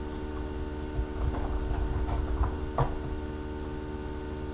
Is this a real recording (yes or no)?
yes